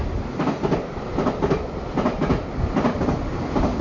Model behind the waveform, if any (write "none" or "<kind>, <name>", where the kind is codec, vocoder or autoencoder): none